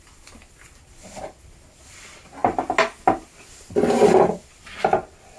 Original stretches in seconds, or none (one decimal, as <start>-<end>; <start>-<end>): 0.0-5.4